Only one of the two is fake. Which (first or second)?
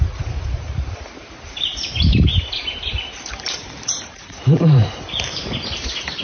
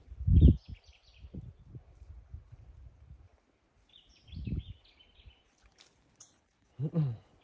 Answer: first